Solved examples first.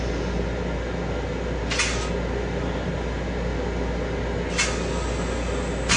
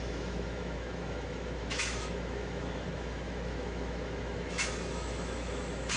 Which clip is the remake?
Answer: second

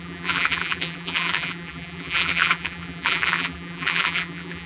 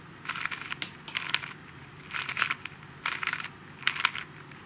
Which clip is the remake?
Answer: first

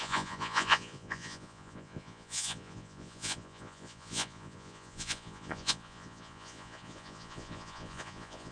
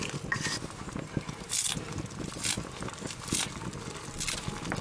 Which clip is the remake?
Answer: first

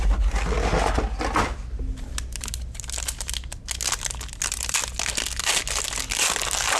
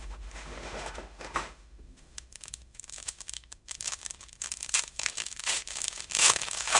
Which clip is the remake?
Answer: second